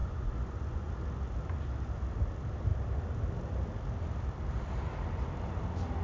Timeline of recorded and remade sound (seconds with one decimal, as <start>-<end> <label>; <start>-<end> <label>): 0.0-0.9 remade; 0.9-6.0 recorded